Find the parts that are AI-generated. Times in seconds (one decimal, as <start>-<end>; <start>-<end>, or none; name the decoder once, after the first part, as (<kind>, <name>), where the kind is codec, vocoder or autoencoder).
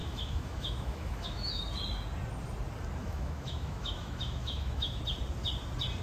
0.0-1.6 (autoencoder, DAC-VAE); 3.0-5.0